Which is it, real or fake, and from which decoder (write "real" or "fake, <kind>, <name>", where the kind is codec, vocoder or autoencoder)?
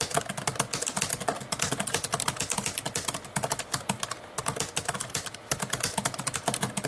real